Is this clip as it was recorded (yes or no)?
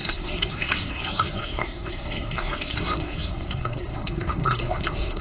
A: no